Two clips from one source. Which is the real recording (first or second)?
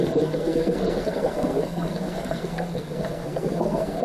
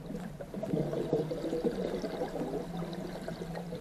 second